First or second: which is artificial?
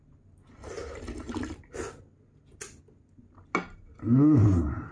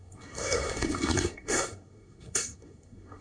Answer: second